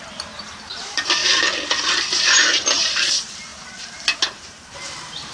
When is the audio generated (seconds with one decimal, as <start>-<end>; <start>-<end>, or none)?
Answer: 0.0-1.2; 2.4-5.3